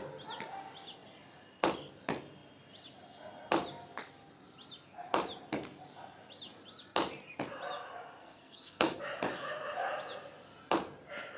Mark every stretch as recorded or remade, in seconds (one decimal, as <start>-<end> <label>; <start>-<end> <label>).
0.0-8.2 recorded; 8.2-9.0 remade; 9.0-11.4 recorded